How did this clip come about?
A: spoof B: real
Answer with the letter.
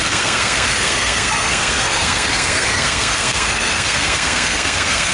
A